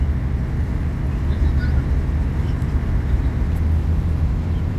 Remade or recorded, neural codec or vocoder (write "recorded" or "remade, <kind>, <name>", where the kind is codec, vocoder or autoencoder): recorded